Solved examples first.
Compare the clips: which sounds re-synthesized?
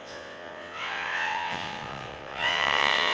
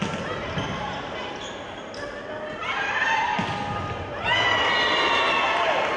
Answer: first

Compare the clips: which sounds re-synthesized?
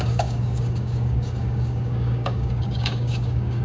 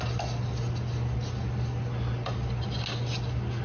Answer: first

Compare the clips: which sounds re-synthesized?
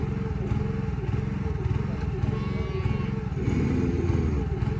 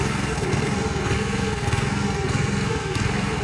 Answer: second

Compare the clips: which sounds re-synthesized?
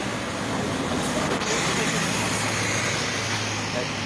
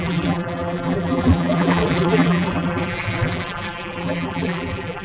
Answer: second